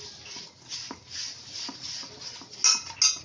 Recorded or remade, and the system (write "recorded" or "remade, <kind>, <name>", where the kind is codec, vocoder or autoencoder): recorded